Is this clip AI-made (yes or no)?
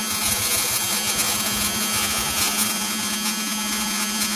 yes